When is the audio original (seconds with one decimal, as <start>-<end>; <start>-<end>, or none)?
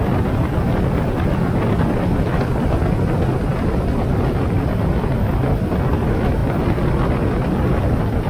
0.0-8.3